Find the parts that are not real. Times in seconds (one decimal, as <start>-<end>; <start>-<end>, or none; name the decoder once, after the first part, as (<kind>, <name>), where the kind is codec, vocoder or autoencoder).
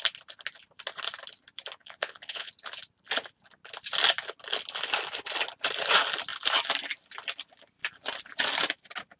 1.8-2.5 (vocoder, Vocos)